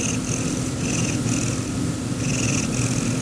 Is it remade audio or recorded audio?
recorded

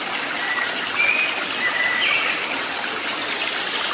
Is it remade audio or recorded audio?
recorded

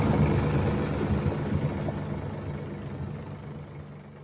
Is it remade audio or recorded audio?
recorded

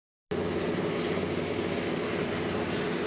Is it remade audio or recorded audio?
recorded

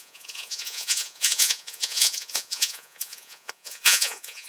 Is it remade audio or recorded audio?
remade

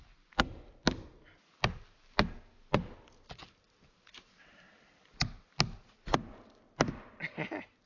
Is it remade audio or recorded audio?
recorded